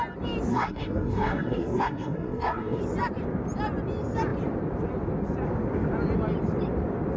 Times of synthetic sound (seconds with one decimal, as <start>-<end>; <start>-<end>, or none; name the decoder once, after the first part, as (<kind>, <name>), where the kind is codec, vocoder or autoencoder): 0.5-2.8 (codec, SNAC)